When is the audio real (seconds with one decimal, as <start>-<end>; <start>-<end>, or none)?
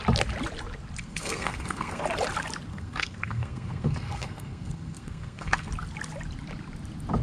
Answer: 0.0-1.0; 2.0-2.7; 5.7-7.2